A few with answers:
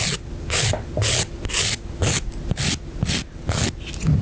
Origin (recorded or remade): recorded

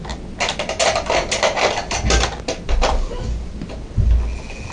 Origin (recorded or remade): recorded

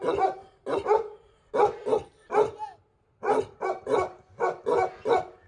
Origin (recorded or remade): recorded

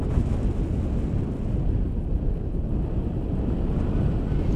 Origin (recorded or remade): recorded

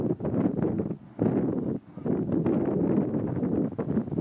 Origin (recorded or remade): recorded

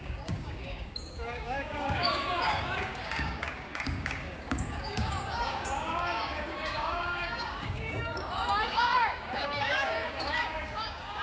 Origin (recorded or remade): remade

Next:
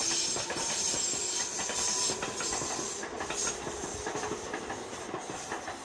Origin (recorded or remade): recorded